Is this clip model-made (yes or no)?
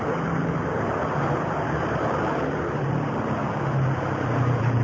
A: yes